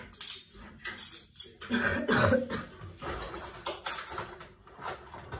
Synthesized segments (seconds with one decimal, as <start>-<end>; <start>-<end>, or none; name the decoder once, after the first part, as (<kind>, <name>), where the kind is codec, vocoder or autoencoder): none